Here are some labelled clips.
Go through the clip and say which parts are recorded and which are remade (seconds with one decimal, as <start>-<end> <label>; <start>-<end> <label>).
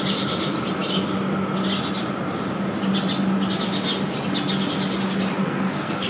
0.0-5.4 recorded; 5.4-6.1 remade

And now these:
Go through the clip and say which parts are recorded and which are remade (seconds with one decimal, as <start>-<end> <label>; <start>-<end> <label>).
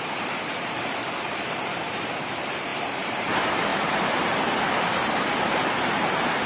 0.0-6.5 remade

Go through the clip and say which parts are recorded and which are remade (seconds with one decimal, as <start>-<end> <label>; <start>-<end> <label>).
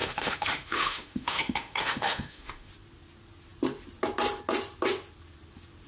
0.0-2.7 remade; 2.7-5.9 recorded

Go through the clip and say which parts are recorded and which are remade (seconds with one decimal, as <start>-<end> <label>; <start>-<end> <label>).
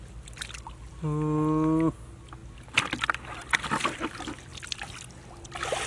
0.0-5.9 recorded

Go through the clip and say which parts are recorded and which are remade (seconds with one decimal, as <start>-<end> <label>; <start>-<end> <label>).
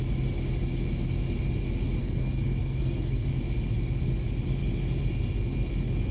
0.0-2.0 recorded; 2.0-3.3 remade; 3.3-6.1 recorded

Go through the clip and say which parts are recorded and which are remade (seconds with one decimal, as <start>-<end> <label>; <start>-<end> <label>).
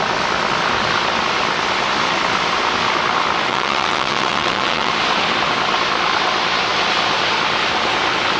0.0-3.5 recorded; 3.5-4.9 remade; 4.9-8.4 recorded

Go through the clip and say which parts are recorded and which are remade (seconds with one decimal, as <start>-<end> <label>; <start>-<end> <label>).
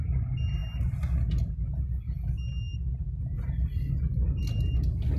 0.0-5.2 recorded